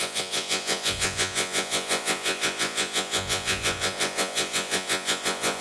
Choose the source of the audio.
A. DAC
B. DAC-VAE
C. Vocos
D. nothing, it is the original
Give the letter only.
C